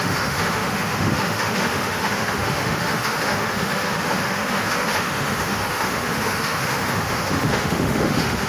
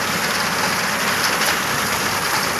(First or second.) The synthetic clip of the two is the first